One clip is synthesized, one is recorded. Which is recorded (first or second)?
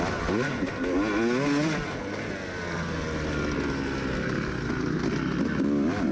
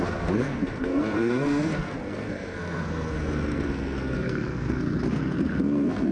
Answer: first